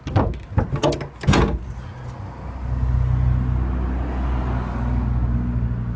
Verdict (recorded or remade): recorded